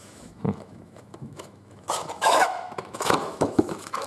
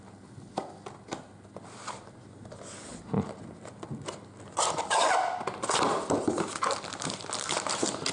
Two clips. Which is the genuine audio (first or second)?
second